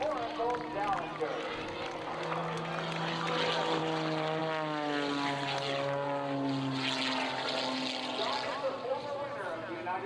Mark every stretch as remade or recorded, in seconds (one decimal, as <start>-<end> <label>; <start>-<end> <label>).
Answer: 0.0-10.1 recorded